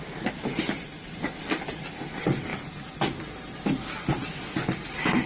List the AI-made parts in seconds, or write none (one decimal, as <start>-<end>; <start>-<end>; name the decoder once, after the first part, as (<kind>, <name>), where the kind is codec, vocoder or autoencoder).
none